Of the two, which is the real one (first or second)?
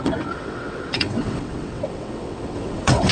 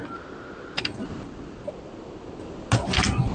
second